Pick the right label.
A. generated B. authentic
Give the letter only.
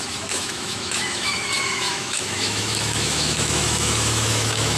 A